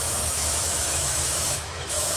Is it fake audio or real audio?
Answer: fake